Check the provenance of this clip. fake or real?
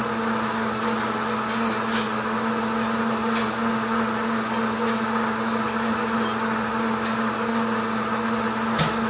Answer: real